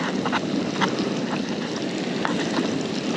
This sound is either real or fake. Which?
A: real